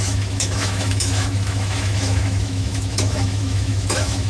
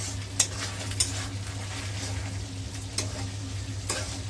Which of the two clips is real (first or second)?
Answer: second